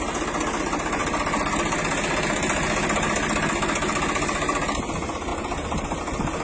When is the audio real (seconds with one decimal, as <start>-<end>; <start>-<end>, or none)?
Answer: 0.0-5.3; 6.0-6.4